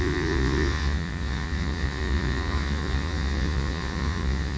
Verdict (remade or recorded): remade